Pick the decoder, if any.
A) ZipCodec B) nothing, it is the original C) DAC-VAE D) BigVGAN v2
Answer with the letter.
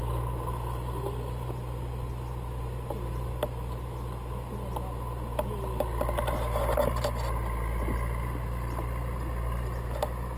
B